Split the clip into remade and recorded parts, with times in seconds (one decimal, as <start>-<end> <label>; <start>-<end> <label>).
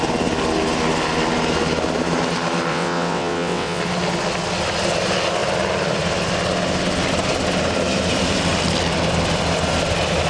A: 0.0-2.7 recorded; 2.7-3.8 remade; 3.8-10.3 recorded